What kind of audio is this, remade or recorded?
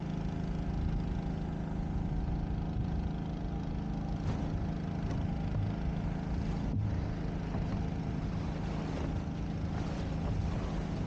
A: recorded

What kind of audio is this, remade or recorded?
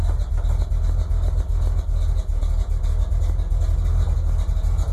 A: recorded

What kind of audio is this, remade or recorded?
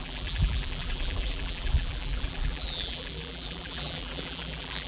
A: remade